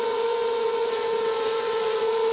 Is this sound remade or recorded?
remade